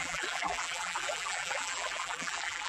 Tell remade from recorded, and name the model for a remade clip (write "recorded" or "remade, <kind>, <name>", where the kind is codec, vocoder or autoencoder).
remade, vocoder, BigVGAN v2